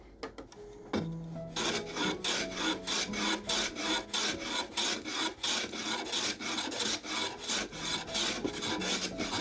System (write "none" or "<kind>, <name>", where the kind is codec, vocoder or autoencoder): none